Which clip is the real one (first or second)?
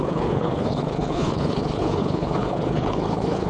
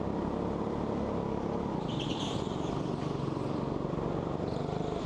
second